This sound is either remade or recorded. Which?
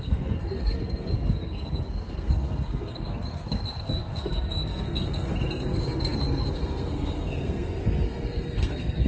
remade